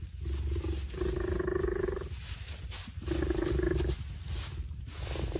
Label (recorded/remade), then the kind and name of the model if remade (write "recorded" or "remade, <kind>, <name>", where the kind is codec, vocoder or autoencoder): recorded